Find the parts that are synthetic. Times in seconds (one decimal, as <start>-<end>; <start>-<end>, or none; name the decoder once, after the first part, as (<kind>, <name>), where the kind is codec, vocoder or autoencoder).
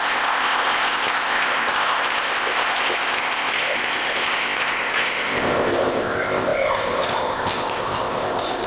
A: 0.0-8.7 (codec, ZipCodec)